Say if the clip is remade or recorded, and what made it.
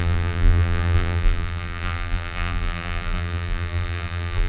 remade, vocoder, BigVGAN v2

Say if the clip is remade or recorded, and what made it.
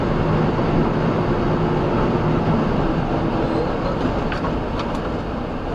recorded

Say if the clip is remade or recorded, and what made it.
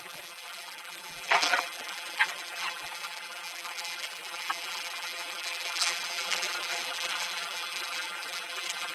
remade, vocoder, BigVGAN v2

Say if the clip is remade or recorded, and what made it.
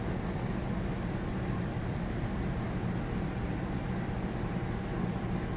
recorded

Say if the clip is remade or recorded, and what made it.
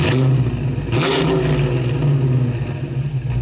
recorded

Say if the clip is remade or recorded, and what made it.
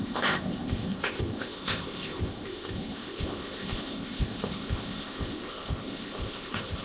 remade, codec, ZipCodec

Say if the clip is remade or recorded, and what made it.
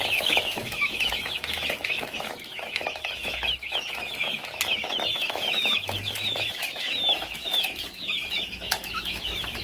remade, autoencoder, DAC-VAE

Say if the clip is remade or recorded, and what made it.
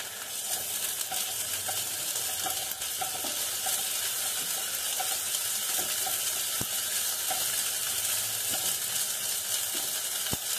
recorded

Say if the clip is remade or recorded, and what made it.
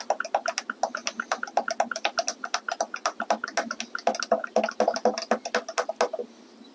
recorded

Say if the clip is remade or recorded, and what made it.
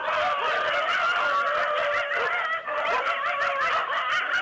recorded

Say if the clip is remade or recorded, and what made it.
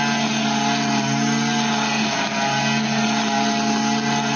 recorded